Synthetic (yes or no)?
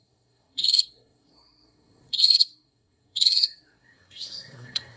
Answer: yes